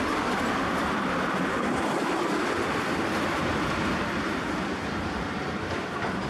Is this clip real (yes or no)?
no